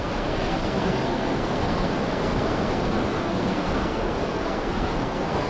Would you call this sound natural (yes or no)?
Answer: no